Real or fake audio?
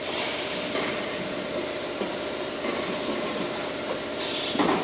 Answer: real